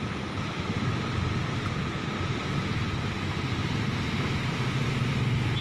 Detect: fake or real real